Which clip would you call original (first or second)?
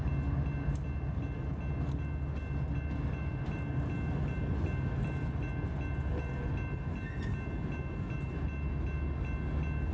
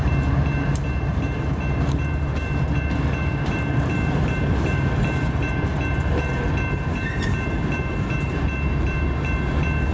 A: first